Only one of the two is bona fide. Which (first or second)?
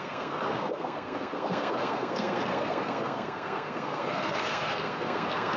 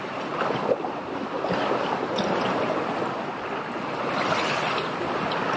second